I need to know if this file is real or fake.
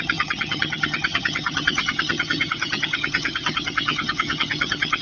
fake